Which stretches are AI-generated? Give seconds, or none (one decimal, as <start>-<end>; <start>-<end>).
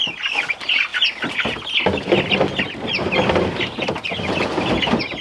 none